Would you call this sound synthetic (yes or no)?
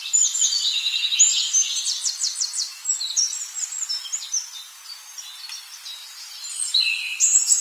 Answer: no